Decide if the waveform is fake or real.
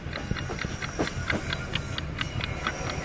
real